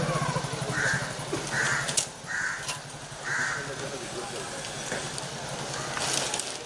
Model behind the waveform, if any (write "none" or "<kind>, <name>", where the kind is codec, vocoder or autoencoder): none